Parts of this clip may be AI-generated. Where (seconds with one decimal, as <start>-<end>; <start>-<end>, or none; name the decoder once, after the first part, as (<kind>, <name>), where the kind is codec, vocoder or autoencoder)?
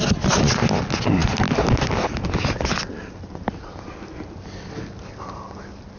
none